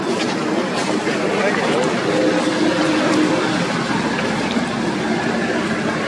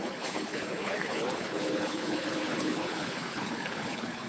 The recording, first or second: first